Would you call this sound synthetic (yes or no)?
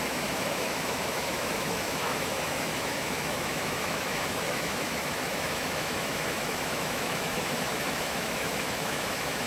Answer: yes